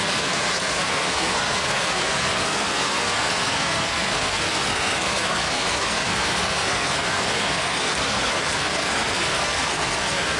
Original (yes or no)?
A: no